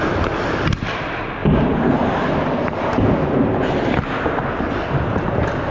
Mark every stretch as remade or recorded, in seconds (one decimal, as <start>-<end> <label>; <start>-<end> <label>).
0.0-5.7 recorded

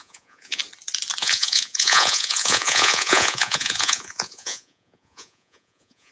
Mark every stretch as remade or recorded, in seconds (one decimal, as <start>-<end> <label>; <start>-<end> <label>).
0.0-0.6 remade; 0.6-1.2 recorded; 1.2-6.1 remade

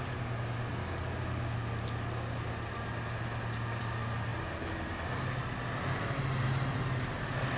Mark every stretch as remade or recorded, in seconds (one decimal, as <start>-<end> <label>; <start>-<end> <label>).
0.0-7.6 recorded

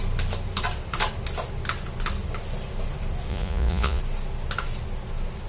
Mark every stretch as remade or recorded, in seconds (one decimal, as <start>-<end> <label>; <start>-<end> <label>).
0.0-3.3 recorded; 3.3-4.0 remade; 4.0-5.5 recorded

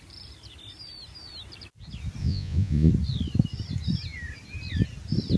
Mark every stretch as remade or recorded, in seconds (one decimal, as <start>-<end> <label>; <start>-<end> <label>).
0.0-2.2 recorded; 2.2-2.9 remade; 2.9-5.4 recorded